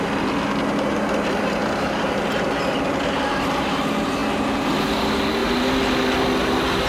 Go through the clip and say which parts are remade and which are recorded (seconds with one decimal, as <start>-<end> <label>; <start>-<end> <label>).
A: 0.0-1.6 recorded; 1.6-2.2 remade; 2.2-6.9 recorded